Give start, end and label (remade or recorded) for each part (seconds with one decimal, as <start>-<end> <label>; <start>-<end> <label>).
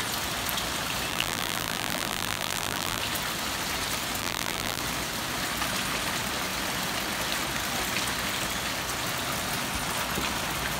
0.0-1.1 recorded; 1.1-3.0 remade; 3.0-4.2 recorded; 4.2-4.8 remade; 4.8-10.8 recorded